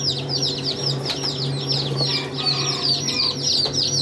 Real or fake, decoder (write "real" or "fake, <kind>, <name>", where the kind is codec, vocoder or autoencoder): real